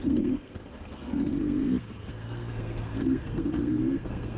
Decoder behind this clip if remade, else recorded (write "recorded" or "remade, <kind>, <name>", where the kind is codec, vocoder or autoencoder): remade, codec, SNAC